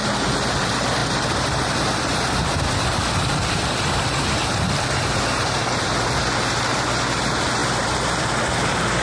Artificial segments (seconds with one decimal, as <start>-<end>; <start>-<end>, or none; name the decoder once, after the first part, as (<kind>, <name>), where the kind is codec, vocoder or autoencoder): 0.5-5.6 (vocoder, BigVGAN v2); 6.6-9.0